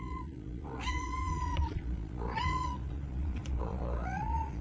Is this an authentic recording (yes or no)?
no